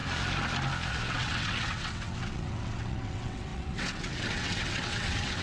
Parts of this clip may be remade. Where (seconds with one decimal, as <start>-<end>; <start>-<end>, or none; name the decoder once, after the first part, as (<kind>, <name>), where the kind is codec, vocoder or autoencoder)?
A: 0.9-5.4 (vocoder, WaveNeXt)